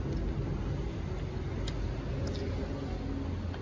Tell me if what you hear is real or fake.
real